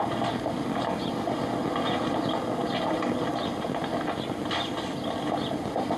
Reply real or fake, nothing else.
real